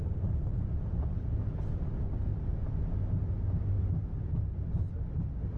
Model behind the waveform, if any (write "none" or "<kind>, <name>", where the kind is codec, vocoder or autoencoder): none